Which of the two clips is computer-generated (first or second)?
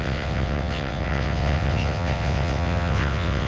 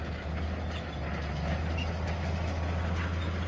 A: first